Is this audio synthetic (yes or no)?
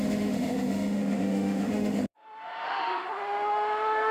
yes